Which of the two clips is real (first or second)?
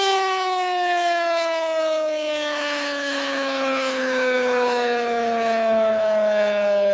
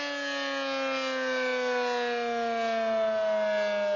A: second